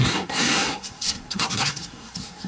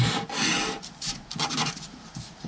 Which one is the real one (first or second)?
second